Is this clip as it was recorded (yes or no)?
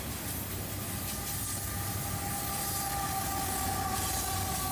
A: yes